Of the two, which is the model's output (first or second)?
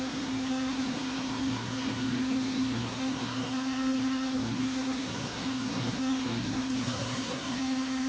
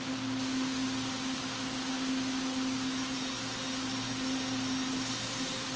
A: first